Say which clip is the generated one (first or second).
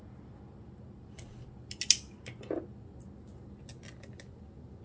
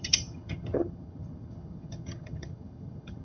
second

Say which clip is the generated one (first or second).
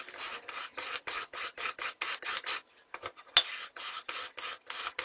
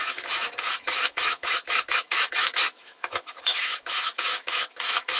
second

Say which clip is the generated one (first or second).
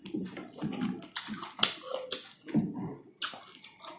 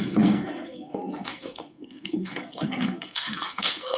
second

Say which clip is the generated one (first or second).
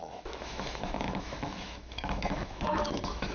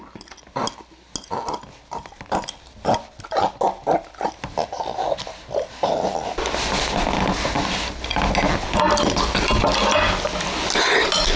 first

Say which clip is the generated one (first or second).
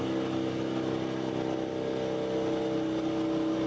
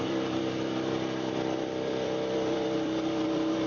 second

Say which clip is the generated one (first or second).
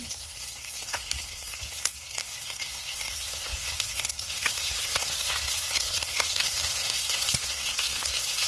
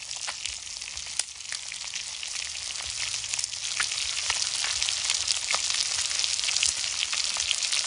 first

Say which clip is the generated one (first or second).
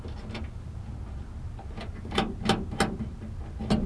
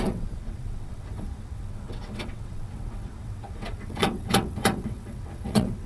second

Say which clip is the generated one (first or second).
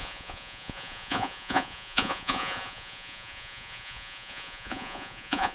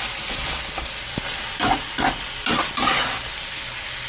first